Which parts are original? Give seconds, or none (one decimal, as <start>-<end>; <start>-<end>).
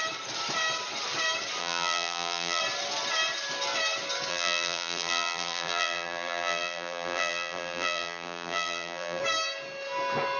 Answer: 0.0-1.6; 2.6-4.3; 9.2-10.4